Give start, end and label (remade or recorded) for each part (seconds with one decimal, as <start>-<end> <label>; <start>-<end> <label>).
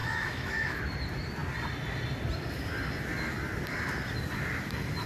0.0-0.8 remade; 0.8-5.1 recorded